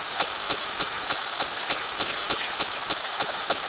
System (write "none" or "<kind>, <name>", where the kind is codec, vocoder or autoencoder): none